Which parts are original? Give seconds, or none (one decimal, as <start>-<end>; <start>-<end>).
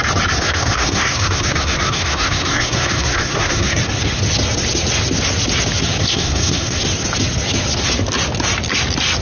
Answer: 0.0-0.4; 3.8-6.0; 6.8-9.2